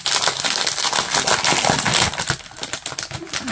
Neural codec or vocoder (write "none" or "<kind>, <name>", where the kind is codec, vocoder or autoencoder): none